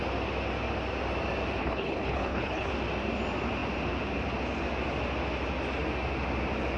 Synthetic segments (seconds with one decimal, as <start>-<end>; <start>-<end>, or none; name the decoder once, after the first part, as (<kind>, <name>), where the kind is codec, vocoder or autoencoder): 1.6-2.7 (codec, HILCodec)